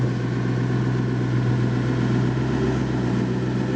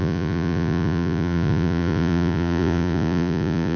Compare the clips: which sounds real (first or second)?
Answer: first